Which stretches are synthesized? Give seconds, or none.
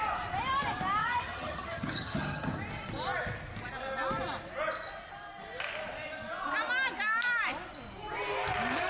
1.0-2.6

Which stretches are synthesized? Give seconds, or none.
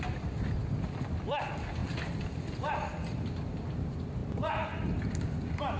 none